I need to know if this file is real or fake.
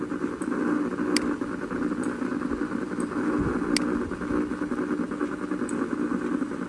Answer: real